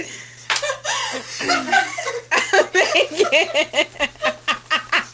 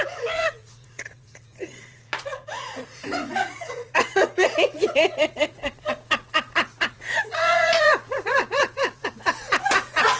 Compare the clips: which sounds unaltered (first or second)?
first